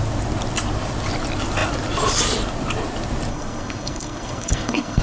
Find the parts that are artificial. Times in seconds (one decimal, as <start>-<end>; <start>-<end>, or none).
3.3-5.0